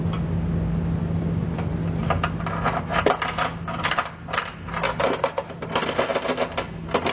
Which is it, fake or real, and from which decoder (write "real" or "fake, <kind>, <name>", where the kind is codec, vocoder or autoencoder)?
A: real